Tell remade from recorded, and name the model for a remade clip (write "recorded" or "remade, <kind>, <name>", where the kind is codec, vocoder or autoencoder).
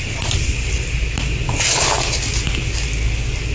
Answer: recorded